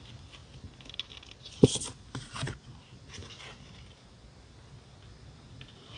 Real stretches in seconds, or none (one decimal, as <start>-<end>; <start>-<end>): 0.0-6.0

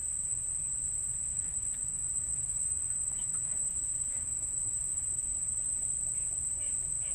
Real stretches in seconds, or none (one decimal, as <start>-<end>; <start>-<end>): 0.0-1.3; 5.6-7.1